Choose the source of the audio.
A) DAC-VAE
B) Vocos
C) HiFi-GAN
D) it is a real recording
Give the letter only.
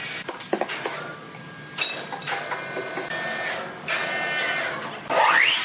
D